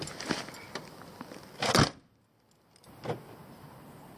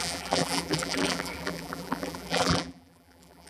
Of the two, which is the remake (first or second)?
second